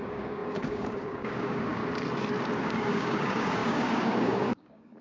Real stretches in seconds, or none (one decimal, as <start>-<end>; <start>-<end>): 1.8-2.6